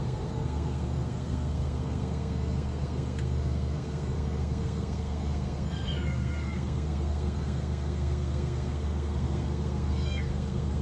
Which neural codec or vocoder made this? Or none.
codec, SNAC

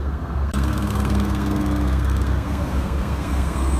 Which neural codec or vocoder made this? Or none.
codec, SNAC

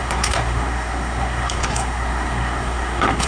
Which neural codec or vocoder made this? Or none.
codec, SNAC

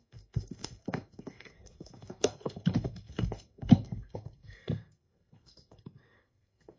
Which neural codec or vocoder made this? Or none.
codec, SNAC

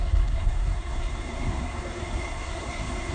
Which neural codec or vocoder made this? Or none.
codec, SNAC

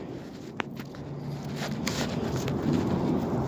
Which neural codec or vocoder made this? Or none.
none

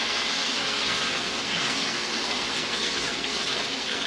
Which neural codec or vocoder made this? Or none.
codec, SNAC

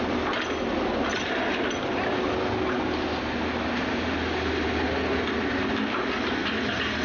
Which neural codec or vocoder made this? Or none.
none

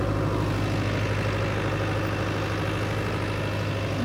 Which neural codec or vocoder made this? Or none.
none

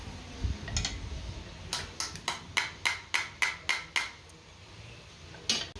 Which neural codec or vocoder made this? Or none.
none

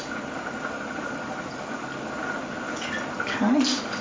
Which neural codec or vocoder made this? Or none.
none